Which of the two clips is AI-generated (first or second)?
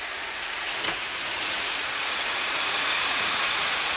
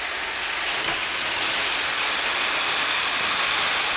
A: first